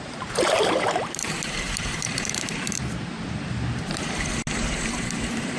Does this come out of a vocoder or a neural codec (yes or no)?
yes